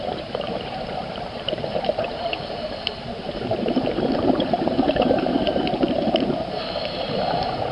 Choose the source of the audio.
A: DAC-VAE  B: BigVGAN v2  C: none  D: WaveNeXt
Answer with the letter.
B